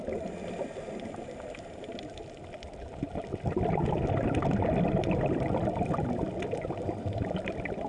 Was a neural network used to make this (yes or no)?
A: no